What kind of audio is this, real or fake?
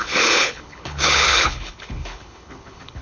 fake